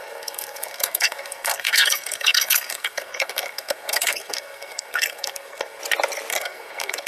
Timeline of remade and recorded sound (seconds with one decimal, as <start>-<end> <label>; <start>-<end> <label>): 0.0-5.8 remade; 5.8-6.3 recorded; 6.3-7.1 remade